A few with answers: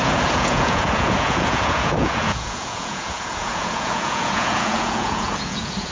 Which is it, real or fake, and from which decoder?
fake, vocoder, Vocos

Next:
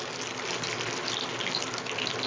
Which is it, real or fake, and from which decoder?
real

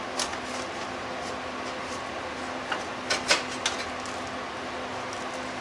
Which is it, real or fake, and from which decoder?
real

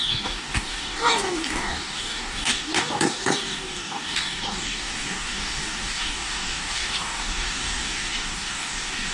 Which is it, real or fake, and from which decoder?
fake, codec, DAC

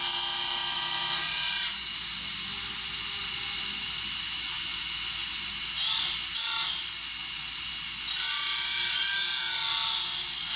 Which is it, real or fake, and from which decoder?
real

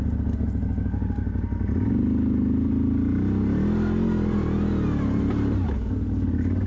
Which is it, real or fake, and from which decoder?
real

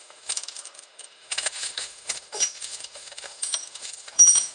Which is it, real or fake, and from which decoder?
fake, autoencoder, DAC-VAE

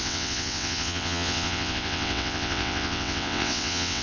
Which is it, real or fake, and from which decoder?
fake, vocoder, WaveNeXt